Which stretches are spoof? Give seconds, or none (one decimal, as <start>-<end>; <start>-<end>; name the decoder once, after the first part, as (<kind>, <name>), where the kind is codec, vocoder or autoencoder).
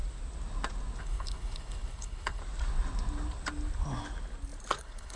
1.0-2.4 (codec, HILCodec); 4.8-5.2